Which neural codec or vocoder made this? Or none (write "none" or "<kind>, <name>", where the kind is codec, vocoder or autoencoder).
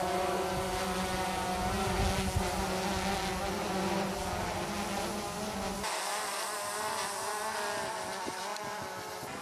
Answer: none